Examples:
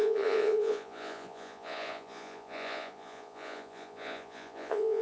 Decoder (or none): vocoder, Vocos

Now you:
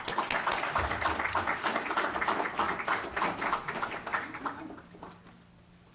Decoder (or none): none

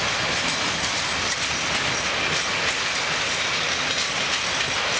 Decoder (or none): none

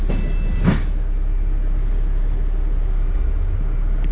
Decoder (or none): none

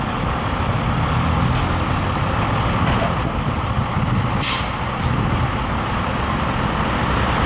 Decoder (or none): none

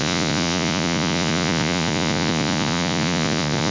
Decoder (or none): vocoder, Vocos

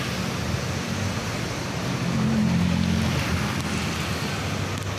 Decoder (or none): none